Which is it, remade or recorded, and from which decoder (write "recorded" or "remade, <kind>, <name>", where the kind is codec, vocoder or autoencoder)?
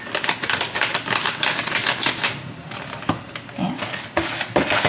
recorded